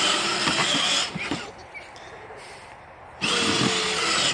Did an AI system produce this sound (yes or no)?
no